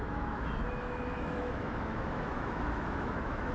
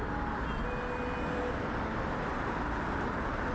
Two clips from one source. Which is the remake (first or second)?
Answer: first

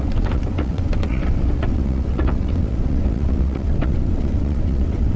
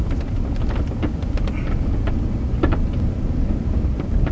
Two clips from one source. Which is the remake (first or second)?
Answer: first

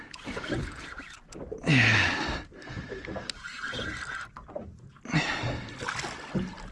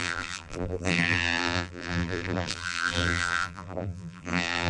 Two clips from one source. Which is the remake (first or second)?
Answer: second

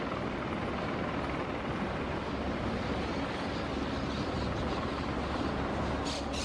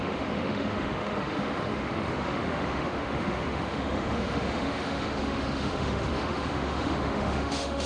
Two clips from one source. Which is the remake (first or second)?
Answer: second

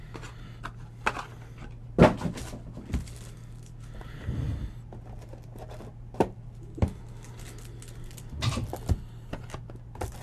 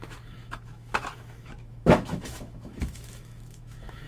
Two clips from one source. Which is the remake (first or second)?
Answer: second